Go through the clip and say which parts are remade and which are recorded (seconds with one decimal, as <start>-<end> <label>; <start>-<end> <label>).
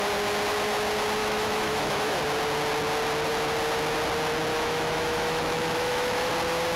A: 0.0-1.2 recorded; 1.2-2.2 remade; 2.2-4.5 recorded; 4.5-6.3 remade; 6.3-6.8 recorded